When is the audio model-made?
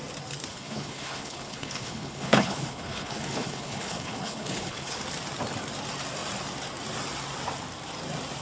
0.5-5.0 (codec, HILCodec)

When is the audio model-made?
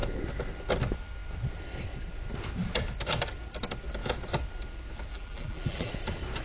5.1-5.9 (vocoder, BigVGAN v2)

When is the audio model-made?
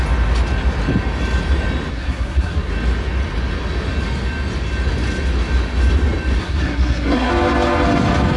1.9-2.7 (codec, SNAC); 6.4-7.3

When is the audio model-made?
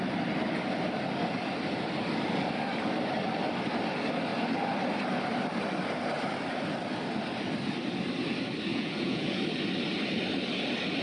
8.7-9.4 (vocoder, Vocos)